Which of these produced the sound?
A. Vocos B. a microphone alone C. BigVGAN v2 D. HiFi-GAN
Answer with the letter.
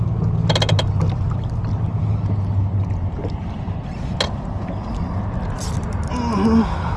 B